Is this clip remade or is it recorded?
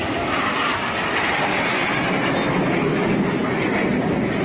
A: recorded